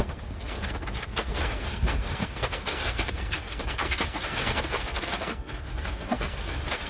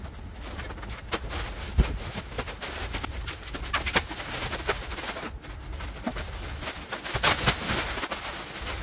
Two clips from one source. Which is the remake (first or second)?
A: first